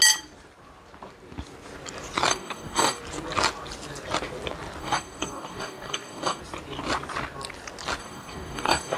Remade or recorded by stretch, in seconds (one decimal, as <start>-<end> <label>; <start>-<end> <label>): 0.0-2.3 recorded; 2.3-3.0 remade; 3.0-4.8 recorded; 4.8-6.4 remade; 6.4-8.0 recorded; 8.0-9.0 remade

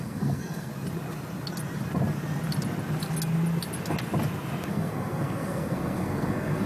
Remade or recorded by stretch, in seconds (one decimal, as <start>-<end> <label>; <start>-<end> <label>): 0.0-0.7 remade; 0.7-4.7 recorded; 4.7-6.7 remade